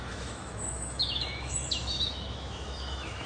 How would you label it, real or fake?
fake